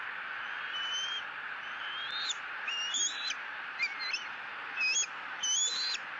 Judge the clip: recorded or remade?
recorded